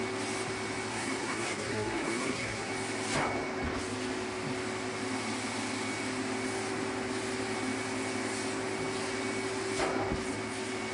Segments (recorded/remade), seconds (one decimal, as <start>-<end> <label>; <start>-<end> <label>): 0.0-0.9 recorded; 0.9-2.7 remade; 2.7-10.9 recorded